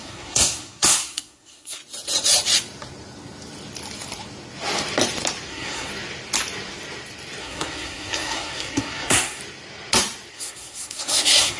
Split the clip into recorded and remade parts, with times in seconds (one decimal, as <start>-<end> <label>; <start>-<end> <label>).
0.0-1.8 remade; 1.8-5.5 recorded; 5.5-5.9 remade; 5.9-7.4 recorded; 7.4-9.4 remade; 9.4-10.3 recorded; 10.3-11.6 remade

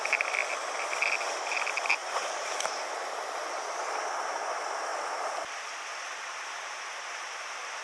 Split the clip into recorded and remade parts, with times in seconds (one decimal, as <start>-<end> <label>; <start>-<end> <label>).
0.0-2.0 recorded; 2.0-2.9 remade; 2.9-7.8 recorded

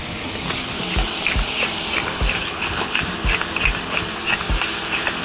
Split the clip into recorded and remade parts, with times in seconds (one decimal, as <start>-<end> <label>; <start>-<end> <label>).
0.0-2.4 recorded; 2.4-3.0 remade; 3.0-5.2 recorded

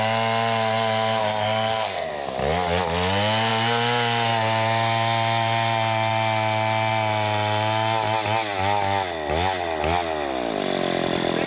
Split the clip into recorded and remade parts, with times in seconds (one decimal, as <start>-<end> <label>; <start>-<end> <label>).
0.0-1.2 recorded; 1.2-2.1 remade; 2.1-11.5 recorded

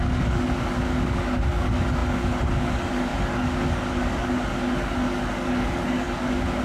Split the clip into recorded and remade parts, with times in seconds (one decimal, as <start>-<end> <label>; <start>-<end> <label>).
0.0-6.6 remade

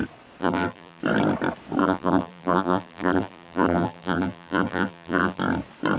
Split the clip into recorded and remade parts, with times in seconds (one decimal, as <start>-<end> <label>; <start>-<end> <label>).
0.0-0.4 recorded; 0.4-1.0 remade; 1.0-1.8 recorded; 1.8-5.4 remade; 5.4-6.0 recorded

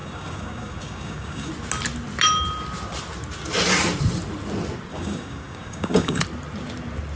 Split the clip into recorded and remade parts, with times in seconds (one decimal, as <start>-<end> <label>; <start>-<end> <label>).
0.0-1.5 remade; 1.5-4.9 recorded; 4.9-6.2 remade; 6.2-7.2 recorded

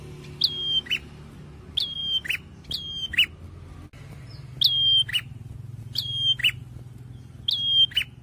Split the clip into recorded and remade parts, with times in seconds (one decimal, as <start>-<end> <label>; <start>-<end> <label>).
0.0-8.2 recorded